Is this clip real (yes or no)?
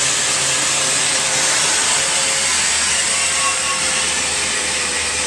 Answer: yes